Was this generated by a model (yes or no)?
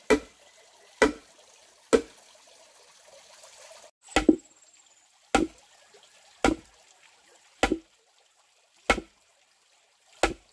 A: no